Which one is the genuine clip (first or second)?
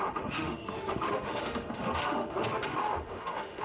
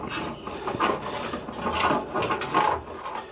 second